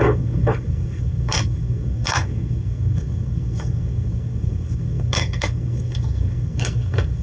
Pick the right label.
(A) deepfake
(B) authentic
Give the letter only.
A